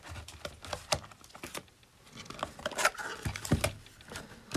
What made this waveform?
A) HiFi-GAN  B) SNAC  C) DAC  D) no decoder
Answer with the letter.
D